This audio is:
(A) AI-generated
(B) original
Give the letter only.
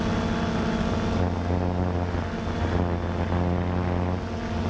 B